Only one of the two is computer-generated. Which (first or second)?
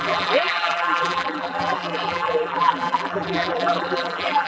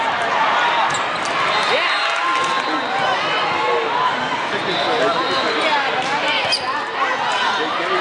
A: first